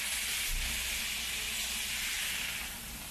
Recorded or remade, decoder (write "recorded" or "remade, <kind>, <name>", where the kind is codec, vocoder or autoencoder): recorded